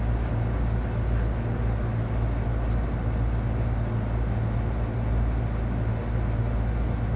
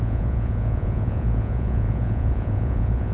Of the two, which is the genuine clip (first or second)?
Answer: first